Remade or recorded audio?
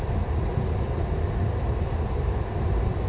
recorded